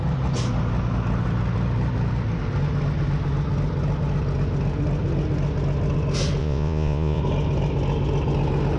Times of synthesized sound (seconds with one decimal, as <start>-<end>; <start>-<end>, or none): 6.4-7.2